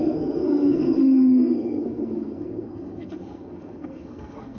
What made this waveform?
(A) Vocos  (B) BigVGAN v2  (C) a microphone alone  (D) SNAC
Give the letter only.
D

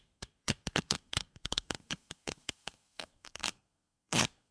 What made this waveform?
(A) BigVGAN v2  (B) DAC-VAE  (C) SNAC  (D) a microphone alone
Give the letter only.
C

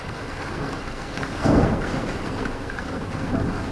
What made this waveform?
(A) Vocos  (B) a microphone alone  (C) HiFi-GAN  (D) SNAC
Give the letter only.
D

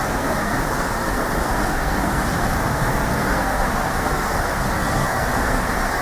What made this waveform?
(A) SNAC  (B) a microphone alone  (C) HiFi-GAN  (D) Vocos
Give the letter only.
A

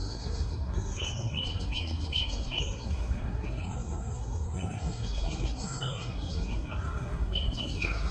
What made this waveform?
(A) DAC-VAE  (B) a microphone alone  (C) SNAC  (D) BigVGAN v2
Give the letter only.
C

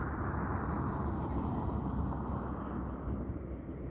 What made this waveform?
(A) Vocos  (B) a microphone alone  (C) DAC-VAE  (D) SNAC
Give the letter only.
B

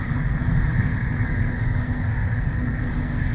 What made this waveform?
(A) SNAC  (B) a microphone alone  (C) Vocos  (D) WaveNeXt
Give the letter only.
A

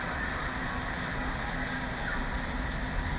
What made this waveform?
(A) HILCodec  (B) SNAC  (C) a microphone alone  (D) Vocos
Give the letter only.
C